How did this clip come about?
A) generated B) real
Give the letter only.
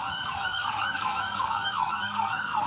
A